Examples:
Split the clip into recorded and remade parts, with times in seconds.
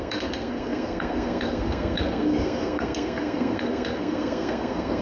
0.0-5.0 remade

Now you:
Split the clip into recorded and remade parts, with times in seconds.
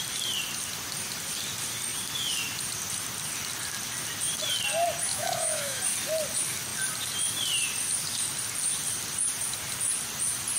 0.0-5.1 recorded; 5.1-5.8 remade; 5.8-10.6 recorded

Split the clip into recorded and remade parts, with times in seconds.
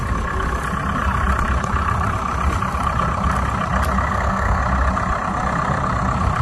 0.0-4.1 recorded; 4.1-4.6 remade; 4.6-6.4 recorded